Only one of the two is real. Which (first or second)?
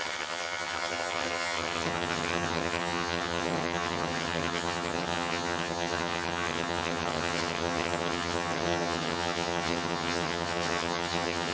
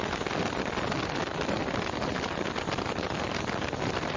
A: second